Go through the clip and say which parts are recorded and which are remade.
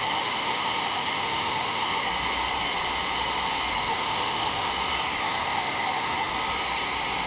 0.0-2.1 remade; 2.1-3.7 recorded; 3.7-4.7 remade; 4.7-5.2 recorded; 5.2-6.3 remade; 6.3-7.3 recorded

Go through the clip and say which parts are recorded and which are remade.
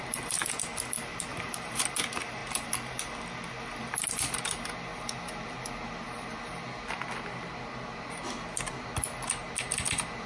0.0-1.3 recorded; 1.3-1.8 remade; 1.8-10.3 recorded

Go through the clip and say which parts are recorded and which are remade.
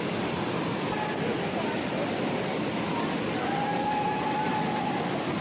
0.0-5.4 recorded